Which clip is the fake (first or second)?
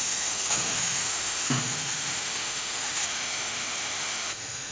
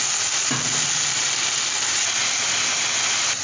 first